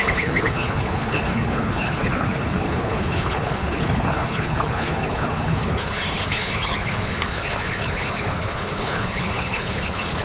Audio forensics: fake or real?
fake